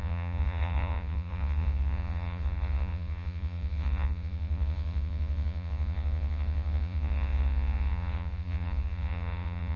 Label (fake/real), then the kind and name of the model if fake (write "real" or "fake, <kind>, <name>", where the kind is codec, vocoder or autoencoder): fake, vocoder, Vocos